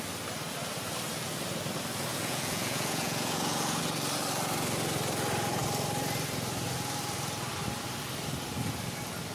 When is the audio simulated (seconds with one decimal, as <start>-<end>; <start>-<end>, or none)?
2.1-3.8